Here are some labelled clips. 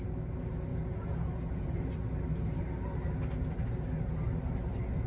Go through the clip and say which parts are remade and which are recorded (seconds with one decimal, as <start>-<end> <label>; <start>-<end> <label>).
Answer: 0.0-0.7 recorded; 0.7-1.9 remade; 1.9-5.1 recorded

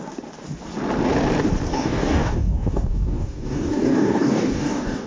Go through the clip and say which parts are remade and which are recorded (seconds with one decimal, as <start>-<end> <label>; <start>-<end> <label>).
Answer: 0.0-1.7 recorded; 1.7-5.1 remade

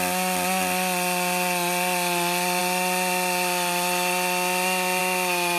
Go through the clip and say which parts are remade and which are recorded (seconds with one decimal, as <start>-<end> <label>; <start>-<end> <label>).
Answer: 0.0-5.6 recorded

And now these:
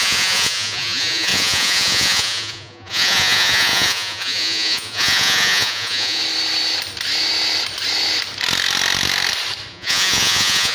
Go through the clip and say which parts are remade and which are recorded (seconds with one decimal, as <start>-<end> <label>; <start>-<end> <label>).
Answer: 0.0-6.2 remade; 6.2-9.7 recorded; 9.7-10.7 remade

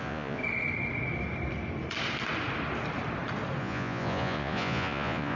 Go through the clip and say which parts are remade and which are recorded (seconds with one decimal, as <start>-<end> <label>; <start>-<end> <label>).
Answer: 0.0-0.4 remade; 0.4-3.6 recorded; 3.6-5.4 remade

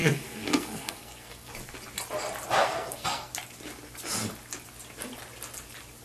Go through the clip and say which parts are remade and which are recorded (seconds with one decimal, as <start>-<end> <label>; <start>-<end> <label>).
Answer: 0.0-1.5 remade; 1.5-2.6 recorded; 2.6-3.3 remade; 3.3-6.0 recorded